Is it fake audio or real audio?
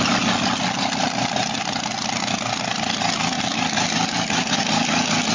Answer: real